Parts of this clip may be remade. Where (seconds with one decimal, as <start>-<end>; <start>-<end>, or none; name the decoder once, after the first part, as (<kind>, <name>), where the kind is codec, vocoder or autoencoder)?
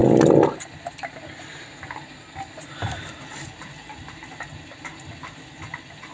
none